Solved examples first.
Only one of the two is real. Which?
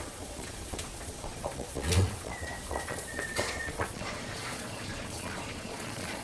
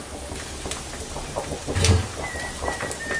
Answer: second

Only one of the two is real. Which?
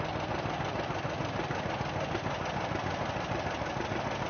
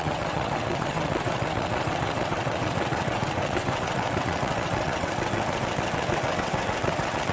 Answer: first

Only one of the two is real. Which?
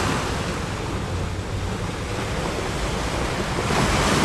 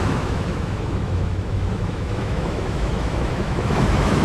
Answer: first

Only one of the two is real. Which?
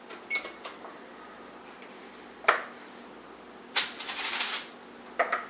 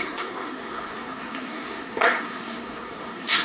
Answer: first